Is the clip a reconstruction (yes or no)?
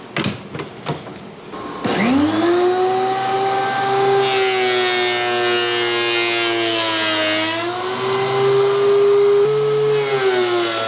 no